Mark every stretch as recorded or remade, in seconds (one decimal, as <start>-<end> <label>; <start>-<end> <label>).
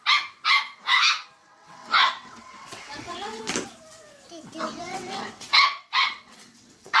0.0-1.4 recorded; 1.4-3.4 remade; 3.4-4.7 recorded; 4.7-7.0 remade